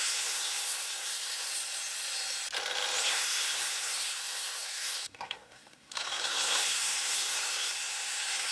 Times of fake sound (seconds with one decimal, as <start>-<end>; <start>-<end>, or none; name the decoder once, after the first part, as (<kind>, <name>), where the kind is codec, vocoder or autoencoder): 0.0-1.5 (codec, SNAC); 3.0-8.5